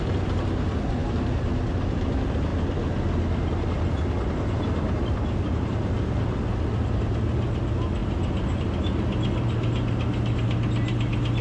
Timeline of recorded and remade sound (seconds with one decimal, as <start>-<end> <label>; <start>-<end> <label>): 0.0-11.4 recorded